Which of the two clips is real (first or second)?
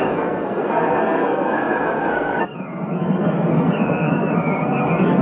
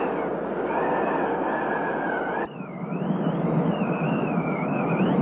second